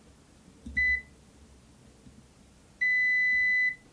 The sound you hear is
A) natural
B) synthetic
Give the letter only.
A